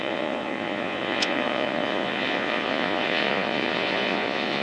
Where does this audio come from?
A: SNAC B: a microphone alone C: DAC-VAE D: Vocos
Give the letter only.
D